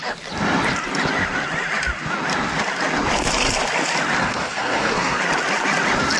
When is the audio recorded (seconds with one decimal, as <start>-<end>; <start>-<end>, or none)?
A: 0.0-4.2; 5.2-6.2